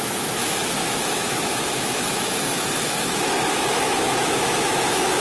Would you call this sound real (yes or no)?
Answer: no